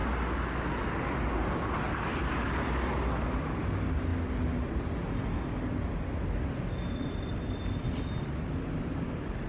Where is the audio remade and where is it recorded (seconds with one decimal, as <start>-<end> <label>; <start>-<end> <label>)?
0.0-9.5 recorded